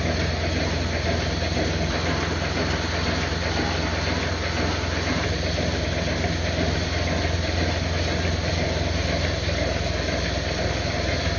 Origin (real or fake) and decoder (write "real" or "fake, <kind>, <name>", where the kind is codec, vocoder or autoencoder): real